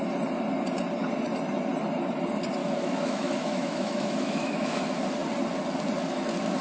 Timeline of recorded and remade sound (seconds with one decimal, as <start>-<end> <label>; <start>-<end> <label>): 0.0-2.6 recorded; 2.6-4.8 remade; 4.8-6.6 recorded